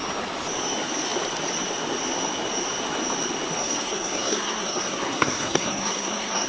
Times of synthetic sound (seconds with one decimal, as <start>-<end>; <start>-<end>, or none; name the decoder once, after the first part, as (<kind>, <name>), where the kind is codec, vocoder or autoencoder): 3.6-6.5 (codec, SNAC)

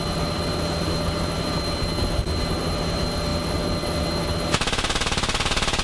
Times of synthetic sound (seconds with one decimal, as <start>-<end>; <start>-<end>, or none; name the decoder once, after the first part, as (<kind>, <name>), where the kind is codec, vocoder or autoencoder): none

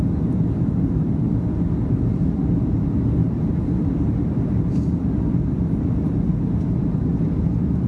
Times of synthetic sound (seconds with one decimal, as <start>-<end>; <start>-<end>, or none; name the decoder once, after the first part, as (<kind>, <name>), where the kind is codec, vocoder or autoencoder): 3.2-4.1 (vocoder, BigVGAN v2)

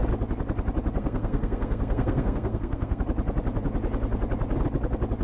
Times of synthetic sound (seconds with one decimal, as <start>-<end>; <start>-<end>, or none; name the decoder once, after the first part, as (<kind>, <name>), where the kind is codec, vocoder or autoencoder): 1.0-3.0 (codec, SNAC)

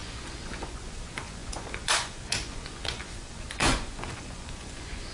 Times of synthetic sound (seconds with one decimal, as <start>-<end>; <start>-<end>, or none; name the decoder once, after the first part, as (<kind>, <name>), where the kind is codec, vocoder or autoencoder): 0.0-5.1 (vocoder, Vocos)